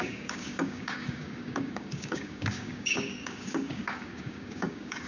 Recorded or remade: remade